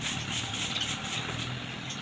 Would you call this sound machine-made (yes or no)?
no